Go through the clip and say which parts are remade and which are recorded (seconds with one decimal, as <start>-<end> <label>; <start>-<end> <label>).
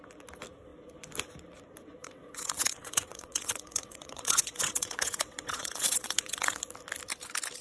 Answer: 0.0-2.0 recorded; 2.0-6.6 remade; 6.6-7.6 recorded